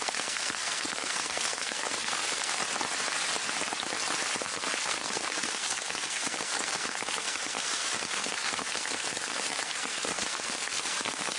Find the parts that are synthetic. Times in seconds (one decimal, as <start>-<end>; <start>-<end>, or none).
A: 0.0-2.6; 4.4-11.4